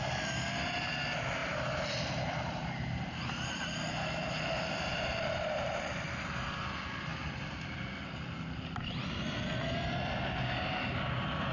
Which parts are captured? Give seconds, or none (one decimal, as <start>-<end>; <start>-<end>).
0.0-11.5

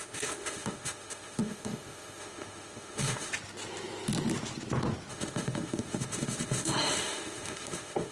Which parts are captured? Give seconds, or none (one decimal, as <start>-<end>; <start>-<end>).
3.3-5.1